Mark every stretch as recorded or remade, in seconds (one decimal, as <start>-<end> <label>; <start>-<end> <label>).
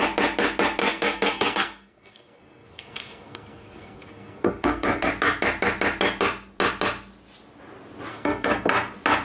0.0-0.8 recorded; 0.8-5.1 remade; 5.1-8.1 recorded; 8.1-8.6 remade; 8.6-9.2 recorded